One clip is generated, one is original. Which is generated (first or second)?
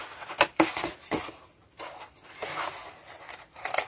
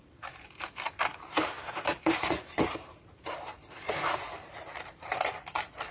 second